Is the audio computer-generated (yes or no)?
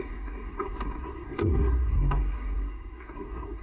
yes